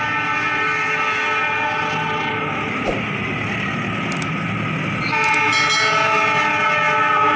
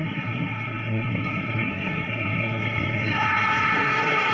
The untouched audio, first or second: first